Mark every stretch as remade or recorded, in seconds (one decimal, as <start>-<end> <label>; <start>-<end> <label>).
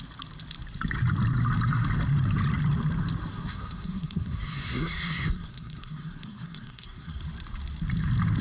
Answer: 0.0-3.3 recorded; 3.3-7.2 remade; 7.2-8.4 recorded